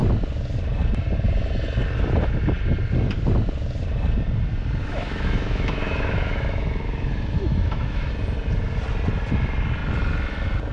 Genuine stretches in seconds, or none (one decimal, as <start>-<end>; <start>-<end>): 0.0-4.8; 8.1-10.7